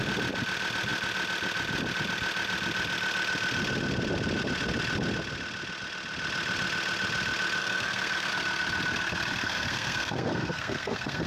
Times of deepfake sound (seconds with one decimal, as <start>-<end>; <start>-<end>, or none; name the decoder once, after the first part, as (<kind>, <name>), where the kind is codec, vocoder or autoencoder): 7.6-8.3 (codec, SNAC); 9.4-11.3